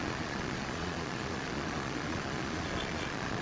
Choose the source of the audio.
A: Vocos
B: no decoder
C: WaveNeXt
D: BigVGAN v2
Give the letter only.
A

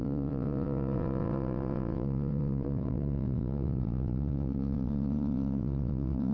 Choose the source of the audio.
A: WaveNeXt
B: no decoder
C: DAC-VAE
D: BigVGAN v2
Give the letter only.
A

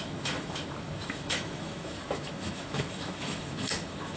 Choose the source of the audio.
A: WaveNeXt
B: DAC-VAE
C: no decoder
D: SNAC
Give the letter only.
B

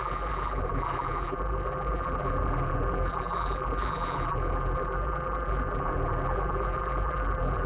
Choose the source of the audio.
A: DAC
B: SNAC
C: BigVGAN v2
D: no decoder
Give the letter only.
C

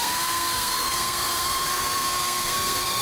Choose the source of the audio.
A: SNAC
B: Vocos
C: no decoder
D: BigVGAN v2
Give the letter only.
A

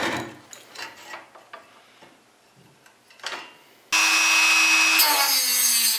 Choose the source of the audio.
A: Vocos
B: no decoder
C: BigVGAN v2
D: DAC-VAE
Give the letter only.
B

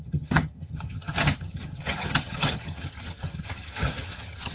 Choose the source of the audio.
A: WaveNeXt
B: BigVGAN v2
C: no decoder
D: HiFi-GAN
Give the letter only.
D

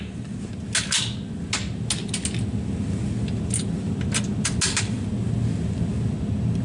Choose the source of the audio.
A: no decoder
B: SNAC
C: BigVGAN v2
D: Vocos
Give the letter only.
A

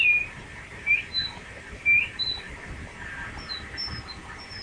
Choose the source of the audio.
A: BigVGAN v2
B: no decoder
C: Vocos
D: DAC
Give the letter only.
A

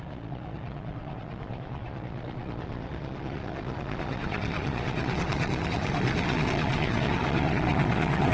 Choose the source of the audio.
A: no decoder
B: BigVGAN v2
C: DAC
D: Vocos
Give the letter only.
D